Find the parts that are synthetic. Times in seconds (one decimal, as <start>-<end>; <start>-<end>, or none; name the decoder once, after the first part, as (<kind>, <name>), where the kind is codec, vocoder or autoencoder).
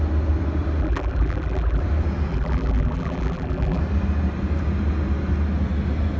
0.8-1.8 (vocoder, BigVGAN v2); 2.3-3.8